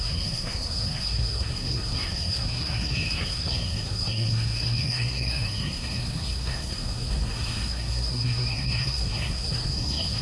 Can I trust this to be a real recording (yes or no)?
no